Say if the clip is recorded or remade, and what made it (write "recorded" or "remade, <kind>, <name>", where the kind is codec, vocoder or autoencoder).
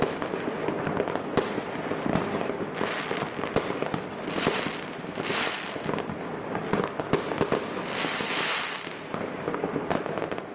recorded